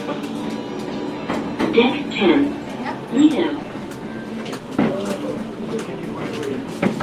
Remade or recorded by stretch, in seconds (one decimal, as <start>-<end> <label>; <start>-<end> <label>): 0.0-0.4 remade; 0.4-4.6 recorded; 4.6-5.3 remade; 5.3-6.5 recorded; 6.5-7.0 remade